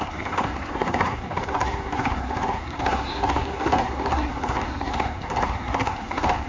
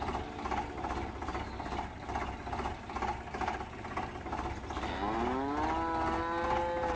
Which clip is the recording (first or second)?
second